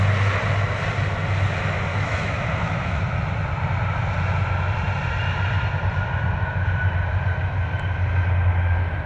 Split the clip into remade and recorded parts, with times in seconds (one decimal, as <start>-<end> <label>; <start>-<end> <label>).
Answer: 0.0-1.9 recorded; 1.9-3.0 remade; 3.0-9.1 recorded